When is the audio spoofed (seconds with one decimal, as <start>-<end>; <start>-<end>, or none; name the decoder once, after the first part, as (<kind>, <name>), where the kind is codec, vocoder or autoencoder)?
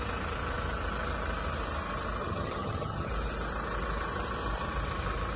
2.2-3.1 (vocoder, HiFi-GAN)